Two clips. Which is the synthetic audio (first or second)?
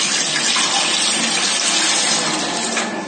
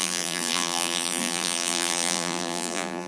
second